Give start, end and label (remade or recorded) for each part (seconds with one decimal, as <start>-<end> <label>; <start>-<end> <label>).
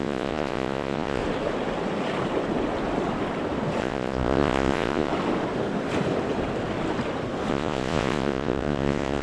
0.0-1.2 remade; 1.2-3.8 recorded; 3.8-5.1 remade; 5.1-7.5 recorded; 7.5-9.2 remade